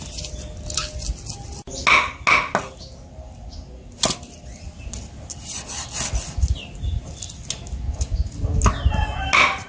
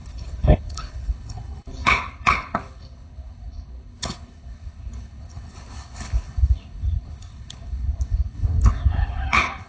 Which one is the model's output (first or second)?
second